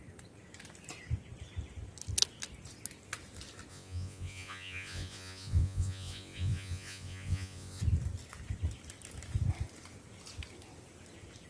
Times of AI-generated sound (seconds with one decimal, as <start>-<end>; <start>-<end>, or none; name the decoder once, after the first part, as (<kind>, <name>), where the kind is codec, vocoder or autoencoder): 3.7-7.8 (vocoder, Vocos)